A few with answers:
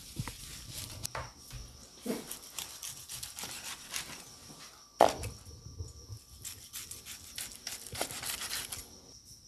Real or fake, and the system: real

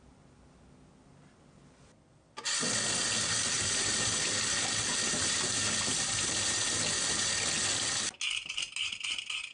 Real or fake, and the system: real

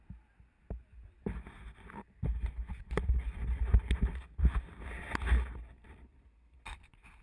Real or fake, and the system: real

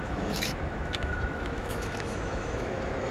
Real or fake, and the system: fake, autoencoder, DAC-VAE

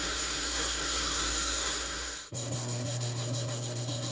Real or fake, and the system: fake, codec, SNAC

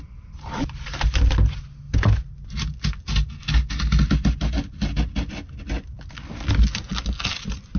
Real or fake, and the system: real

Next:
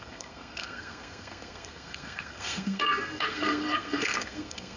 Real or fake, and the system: fake, codec, SNAC